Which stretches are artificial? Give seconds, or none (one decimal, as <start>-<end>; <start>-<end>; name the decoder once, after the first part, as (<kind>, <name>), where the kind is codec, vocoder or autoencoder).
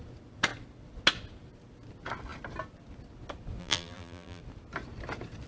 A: 3.6-4.4 (vocoder, BigVGAN v2)